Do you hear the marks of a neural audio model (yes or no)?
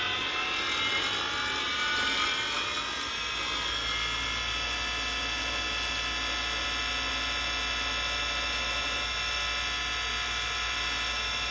no